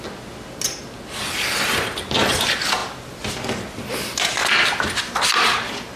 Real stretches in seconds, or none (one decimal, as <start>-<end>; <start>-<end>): 0.0-6.0